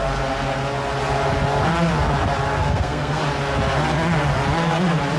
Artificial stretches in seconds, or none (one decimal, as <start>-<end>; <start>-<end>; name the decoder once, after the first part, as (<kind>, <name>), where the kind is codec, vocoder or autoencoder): 2.6-3.2 (codec, SNAC)